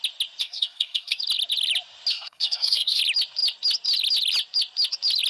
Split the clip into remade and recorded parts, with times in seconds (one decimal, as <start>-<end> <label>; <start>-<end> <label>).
0.0-0.4 recorded; 0.4-1.2 remade; 1.2-2.1 recorded; 2.1-3.0 remade; 3.0-5.3 recorded